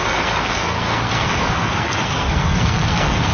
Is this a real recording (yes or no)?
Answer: no